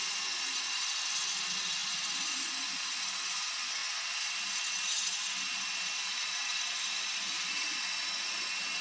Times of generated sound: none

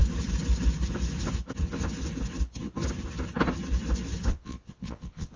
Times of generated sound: 4.3-5.4 (vocoder, Vocos)